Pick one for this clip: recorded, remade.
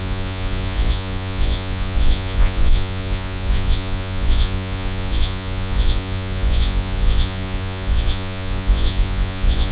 remade